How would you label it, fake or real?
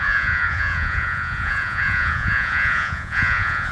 fake